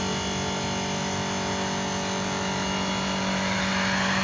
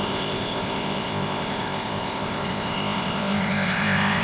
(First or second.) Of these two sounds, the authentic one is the first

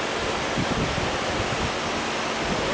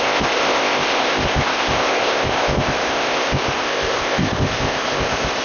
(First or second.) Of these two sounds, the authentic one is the first